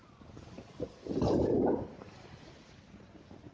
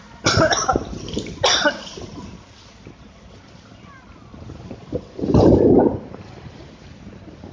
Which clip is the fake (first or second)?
second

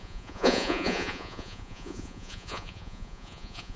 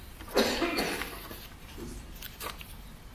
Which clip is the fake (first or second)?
first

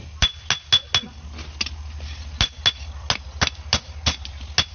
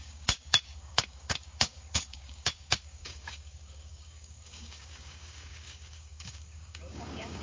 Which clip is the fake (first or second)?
second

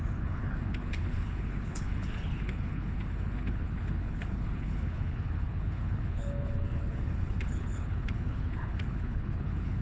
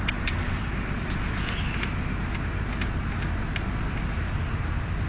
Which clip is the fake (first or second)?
first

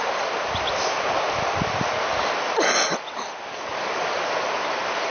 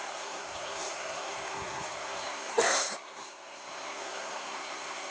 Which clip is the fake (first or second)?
second